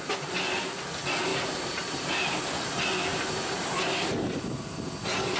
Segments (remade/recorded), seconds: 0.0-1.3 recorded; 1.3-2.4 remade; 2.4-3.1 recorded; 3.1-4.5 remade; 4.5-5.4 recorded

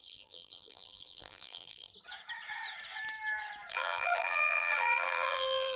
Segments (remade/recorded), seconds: 0.0-1.9 remade; 1.9-3.7 recorded; 3.7-5.8 remade

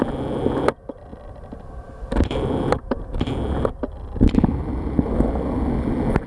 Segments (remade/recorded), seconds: 0.0-6.3 recorded

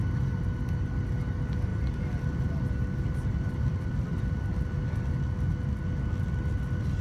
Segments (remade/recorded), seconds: 0.0-1.7 recorded; 1.7-4.3 remade; 4.3-7.0 recorded

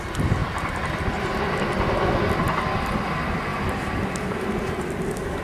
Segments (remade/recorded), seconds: 0.0-5.4 recorded

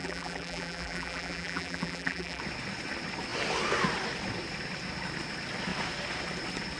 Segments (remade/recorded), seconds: 0.0-2.4 remade; 2.4-6.8 recorded

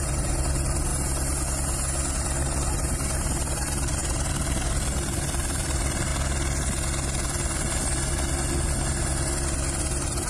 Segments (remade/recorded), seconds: 0.0-0.9 remade; 0.9-2.7 recorded; 2.7-6.1 remade; 6.1-9.8 recorded; 9.8-10.3 remade

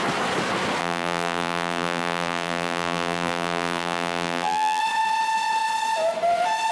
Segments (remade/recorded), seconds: 0.0-0.8 recorded; 0.8-4.8 remade; 4.8-6.7 recorded